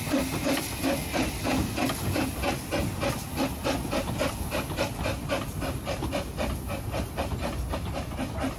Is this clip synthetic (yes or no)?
no